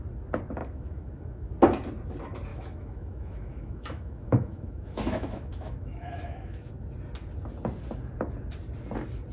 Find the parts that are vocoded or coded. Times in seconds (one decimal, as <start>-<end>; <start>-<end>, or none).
0.6-1.5; 2.5-6.7